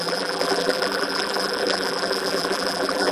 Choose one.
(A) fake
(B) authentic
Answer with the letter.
A